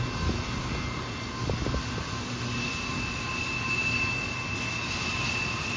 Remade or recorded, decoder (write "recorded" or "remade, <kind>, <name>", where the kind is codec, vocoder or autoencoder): recorded